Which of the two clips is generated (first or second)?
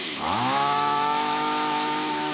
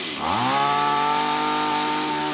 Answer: first